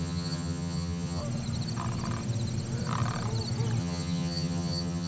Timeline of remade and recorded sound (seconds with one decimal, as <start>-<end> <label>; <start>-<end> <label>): 0.0-1.2 remade; 1.2-3.8 recorded; 3.8-5.1 remade